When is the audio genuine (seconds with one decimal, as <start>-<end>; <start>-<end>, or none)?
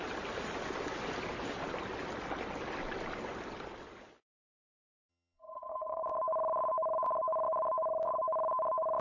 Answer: 0.0-5.1; 6.0-9.0